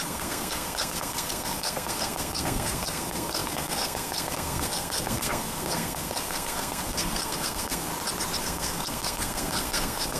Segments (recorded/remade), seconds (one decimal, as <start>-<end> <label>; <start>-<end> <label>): 0.0-7.9 remade; 7.9-8.4 recorded; 8.4-10.2 remade

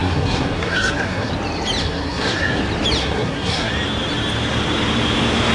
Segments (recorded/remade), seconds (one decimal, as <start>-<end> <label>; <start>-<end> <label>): 0.0-1.3 remade; 1.3-1.8 recorded; 1.8-2.6 remade; 2.6-3.0 recorded; 3.0-3.7 remade; 3.7-5.5 recorded